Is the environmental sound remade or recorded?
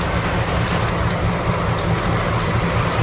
recorded